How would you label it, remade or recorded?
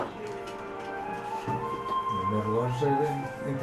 recorded